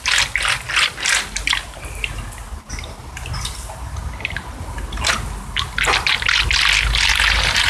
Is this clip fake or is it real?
real